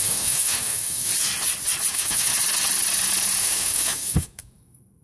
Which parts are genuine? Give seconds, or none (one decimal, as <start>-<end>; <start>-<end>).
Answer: 1.1-1.9; 2.3-3.4